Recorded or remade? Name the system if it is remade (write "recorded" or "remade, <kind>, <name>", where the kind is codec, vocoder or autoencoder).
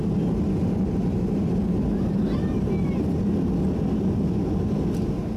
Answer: recorded